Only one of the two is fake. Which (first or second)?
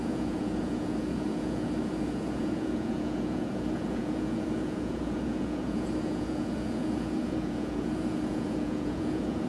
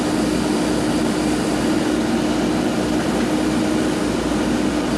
first